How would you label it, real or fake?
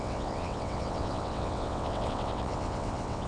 fake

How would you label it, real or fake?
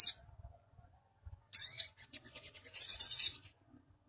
fake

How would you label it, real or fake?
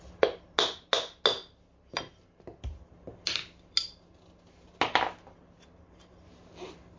real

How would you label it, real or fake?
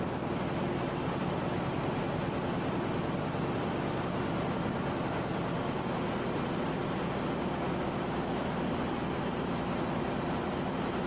real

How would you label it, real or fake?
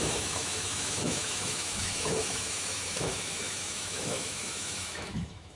fake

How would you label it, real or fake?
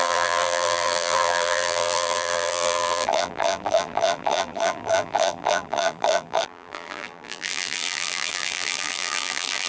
fake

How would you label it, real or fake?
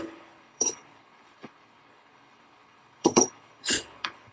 fake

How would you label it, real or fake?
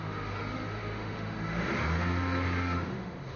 fake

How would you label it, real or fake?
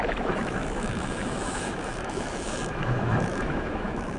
fake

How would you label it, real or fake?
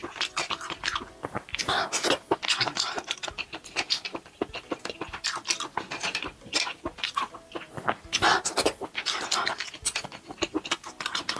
real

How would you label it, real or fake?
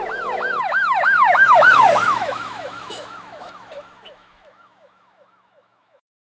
fake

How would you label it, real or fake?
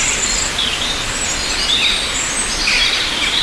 real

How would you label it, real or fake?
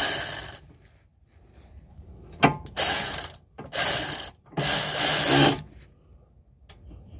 real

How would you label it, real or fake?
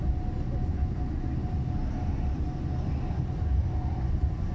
real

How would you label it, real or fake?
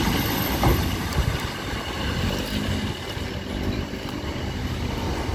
real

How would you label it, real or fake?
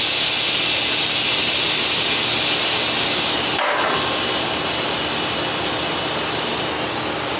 real